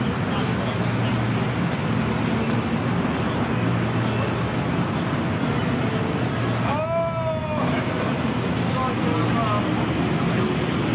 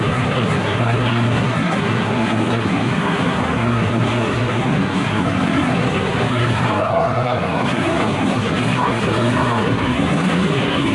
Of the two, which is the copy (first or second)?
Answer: second